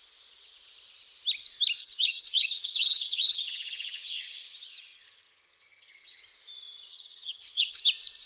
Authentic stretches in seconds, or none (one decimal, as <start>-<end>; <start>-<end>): 0.0-1.8; 6.2-6.9; 7.8-8.3